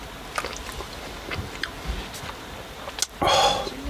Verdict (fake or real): real